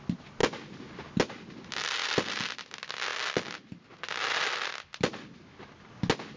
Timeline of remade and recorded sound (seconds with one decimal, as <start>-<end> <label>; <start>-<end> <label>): 0.0-6.4 recorded